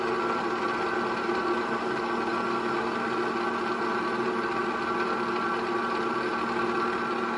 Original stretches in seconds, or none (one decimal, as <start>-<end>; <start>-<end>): 0.0-7.4